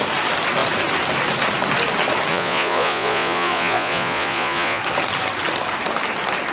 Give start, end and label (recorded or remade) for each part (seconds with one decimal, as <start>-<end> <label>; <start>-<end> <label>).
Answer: 0.0-2.3 recorded; 2.3-4.8 remade; 4.8-6.5 recorded